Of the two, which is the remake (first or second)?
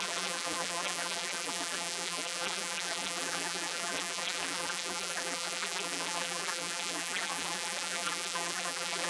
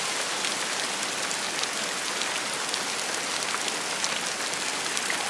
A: first